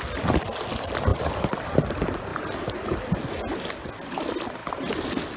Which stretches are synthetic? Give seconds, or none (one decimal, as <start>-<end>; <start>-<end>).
none